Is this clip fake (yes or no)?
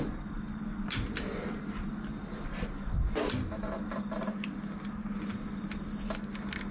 no